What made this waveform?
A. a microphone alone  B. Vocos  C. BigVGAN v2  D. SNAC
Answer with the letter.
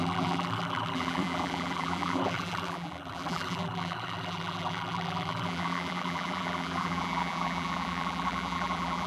C